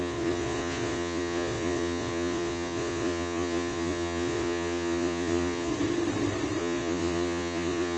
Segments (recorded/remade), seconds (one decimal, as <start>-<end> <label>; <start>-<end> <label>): 0.0-5.7 remade; 5.7-6.6 recorded; 6.6-8.0 remade